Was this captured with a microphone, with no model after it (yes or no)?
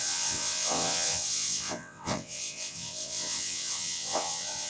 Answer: no